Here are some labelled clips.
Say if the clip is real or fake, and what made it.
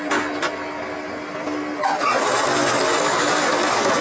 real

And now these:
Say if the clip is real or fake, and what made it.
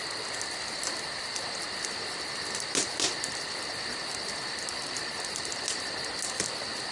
real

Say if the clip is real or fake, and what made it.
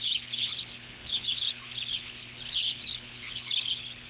fake, codec, HILCodec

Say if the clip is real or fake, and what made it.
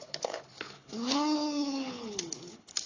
fake, codec, HILCodec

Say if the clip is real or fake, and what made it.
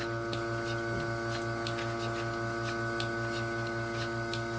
real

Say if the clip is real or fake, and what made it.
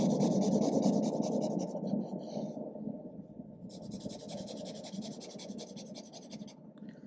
real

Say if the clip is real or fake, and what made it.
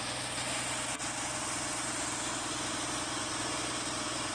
real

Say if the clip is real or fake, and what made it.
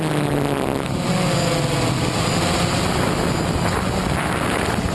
real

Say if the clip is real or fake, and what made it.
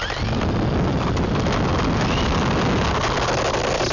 real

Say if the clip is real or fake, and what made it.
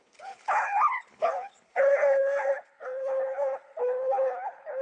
fake, codec, HILCodec